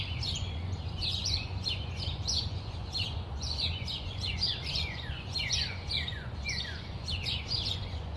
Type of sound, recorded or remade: remade